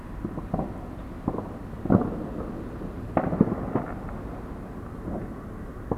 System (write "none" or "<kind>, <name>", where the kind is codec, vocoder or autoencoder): none